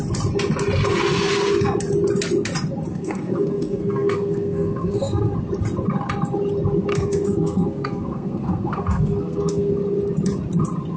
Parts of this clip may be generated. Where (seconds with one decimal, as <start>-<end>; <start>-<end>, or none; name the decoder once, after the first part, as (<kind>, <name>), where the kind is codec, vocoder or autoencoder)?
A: 2.9-5.3 (codec, SNAC); 6.9-9.7